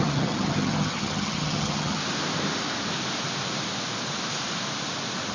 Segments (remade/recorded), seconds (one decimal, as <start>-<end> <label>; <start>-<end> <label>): 0.0-2.0 remade; 2.0-5.3 recorded